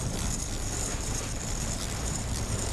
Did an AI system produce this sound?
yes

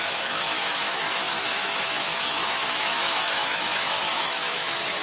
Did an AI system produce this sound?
yes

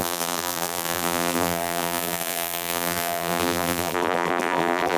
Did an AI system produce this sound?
yes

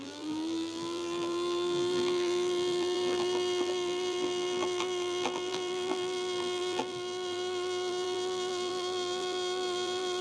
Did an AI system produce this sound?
yes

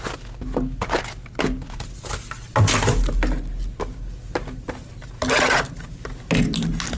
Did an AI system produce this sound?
no